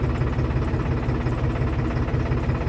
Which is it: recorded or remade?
recorded